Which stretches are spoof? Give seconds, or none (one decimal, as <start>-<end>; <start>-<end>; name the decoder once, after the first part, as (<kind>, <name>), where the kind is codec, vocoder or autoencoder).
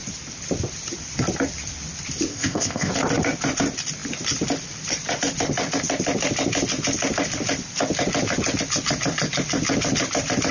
2.3-2.9 (codec, ZipCodec)